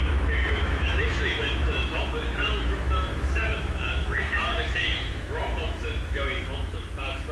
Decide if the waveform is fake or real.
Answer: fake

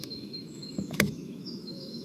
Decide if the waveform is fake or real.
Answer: fake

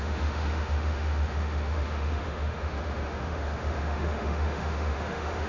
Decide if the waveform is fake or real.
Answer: fake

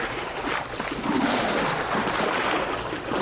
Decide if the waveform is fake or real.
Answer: real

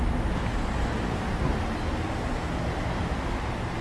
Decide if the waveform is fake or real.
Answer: real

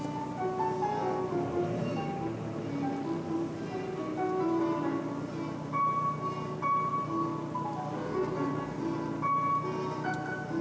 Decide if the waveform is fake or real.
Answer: real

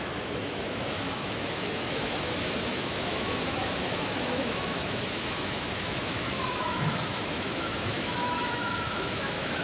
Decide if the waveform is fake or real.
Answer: fake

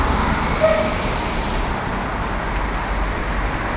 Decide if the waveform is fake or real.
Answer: real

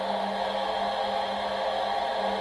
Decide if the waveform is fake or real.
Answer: real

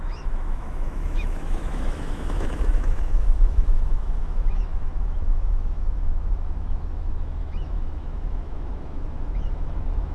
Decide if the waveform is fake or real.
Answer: fake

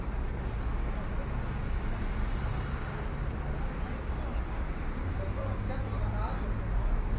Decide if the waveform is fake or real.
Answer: real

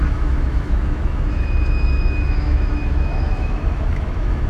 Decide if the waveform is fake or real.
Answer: fake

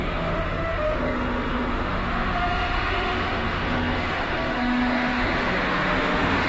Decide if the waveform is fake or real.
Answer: fake